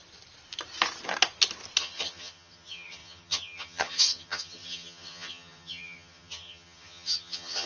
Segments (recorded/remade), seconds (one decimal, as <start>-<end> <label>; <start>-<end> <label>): 0.0-1.8 recorded; 1.8-7.7 remade